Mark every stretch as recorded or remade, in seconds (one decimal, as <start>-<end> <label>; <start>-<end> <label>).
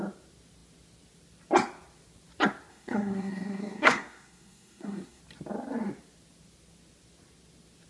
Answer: 0.0-2.7 recorded; 2.7-5.2 remade; 5.2-7.9 recorded